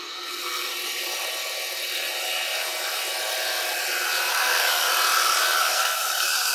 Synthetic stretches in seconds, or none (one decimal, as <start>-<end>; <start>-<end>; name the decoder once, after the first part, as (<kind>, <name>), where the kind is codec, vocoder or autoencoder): 0.0-0.7 (codec, SNAC); 4.3-4.9; 5.6-6.5